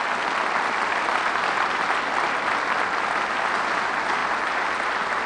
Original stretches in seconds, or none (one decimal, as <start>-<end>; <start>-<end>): 0.0-5.3